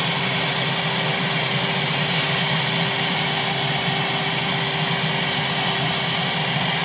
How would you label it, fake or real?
real